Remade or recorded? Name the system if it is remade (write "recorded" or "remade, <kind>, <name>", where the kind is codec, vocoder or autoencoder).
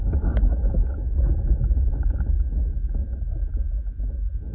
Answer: recorded